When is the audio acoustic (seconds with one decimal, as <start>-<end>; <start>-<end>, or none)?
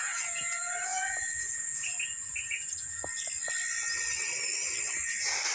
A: 3.0-5.5